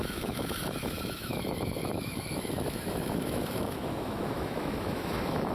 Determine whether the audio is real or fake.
fake